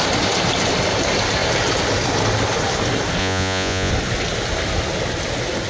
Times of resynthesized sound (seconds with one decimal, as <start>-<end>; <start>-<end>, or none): 3.2-3.9